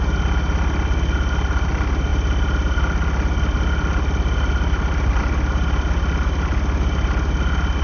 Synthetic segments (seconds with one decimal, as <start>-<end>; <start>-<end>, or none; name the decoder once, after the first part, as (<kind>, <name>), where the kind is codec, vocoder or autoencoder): none